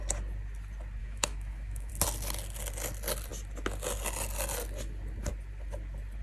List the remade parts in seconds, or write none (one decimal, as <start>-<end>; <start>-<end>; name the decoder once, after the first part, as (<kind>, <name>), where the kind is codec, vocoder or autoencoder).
1.0-1.9 (autoencoder, DAC-VAE)